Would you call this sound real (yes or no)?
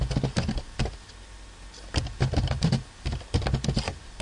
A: yes